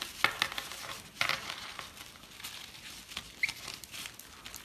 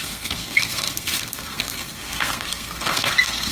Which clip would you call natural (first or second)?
first